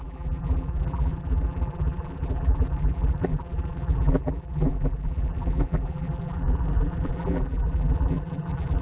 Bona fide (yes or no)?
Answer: no